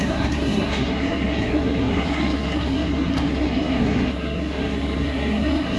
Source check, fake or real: fake